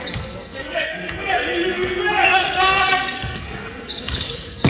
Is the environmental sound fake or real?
fake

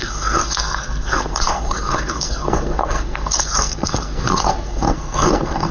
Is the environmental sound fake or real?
fake